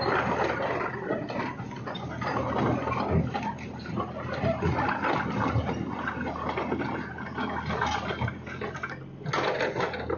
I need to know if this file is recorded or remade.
recorded